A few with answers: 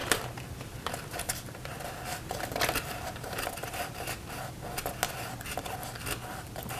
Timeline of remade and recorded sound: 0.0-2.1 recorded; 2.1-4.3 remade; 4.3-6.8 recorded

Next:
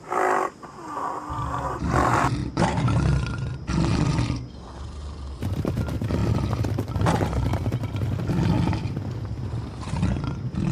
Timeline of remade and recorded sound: 0.0-10.7 recorded

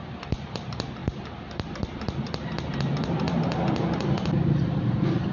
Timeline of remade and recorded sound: 0.0-5.3 remade

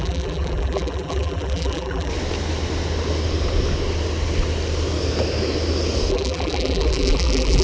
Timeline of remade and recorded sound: 0.0-2.1 remade; 2.1-6.1 recorded; 6.1-7.6 remade